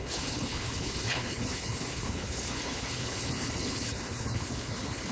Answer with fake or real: fake